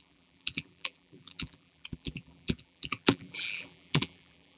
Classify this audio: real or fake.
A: fake